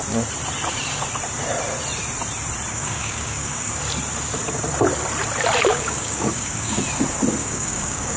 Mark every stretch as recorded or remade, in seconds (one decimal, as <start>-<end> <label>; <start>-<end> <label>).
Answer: 0.0-2.7 recorded; 2.7-3.7 remade; 3.7-5.7 recorded; 5.7-6.8 remade; 6.8-7.4 recorded; 7.4-8.2 remade